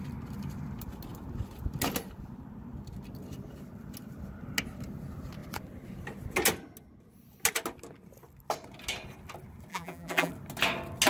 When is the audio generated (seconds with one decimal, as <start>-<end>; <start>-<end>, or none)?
9.7-10.3